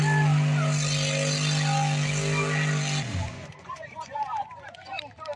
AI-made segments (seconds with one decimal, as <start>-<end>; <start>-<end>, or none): 3.1-5.0